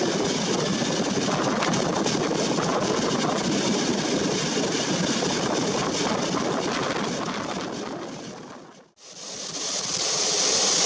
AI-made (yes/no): no